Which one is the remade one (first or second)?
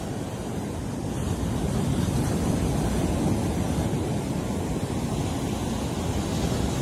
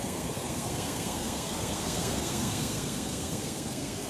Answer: second